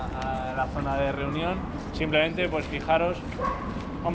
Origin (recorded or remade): recorded